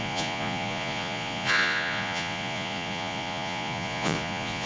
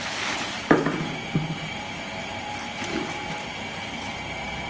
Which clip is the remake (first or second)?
first